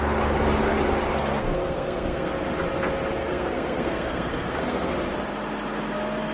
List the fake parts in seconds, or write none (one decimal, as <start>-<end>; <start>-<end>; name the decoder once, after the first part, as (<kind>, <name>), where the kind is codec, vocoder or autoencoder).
1.4-2.3 (codec, SNAC); 3.2-4.9